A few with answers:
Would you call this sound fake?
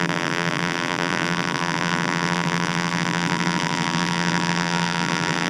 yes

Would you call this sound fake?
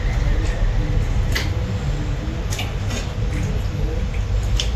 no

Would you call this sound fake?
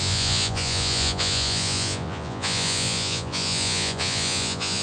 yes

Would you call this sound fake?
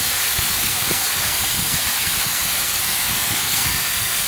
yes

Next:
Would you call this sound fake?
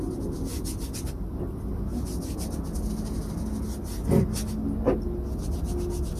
no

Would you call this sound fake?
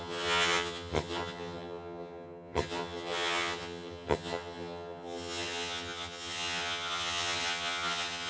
yes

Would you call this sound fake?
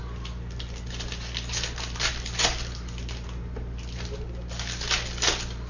no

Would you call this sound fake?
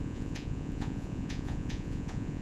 yes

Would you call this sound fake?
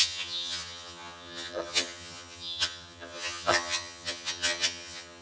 yes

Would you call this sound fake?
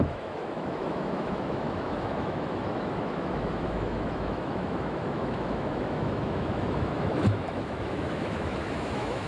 yes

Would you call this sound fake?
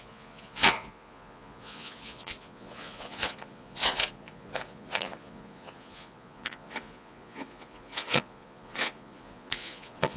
yes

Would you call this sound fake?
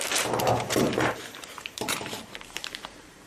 yes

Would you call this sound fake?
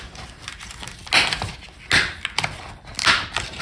no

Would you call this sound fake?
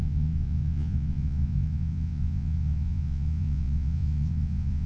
yes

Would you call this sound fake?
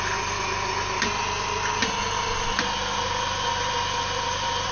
no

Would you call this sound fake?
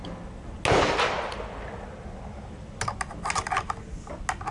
no